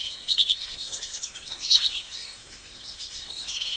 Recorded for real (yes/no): no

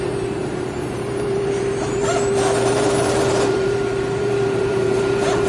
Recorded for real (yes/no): no